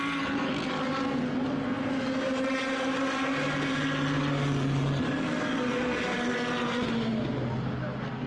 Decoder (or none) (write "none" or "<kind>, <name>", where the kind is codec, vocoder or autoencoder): none